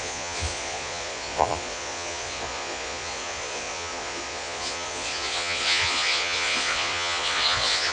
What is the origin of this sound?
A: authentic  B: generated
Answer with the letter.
B